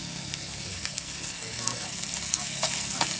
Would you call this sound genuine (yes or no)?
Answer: no